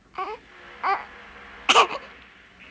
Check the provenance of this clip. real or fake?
real